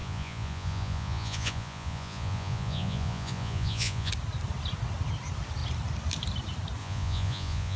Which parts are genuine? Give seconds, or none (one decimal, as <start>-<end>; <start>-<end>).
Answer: 4.1-6.8